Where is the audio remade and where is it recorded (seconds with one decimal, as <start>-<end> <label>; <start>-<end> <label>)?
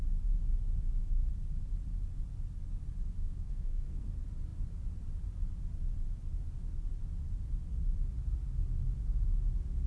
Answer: 0.0-3.2 recorded; 3.2-4.1 remade; 4.1-9.9 recorded